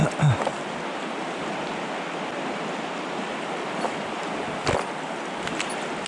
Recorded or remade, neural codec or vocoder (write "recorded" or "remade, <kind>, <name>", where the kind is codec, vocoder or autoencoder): recorded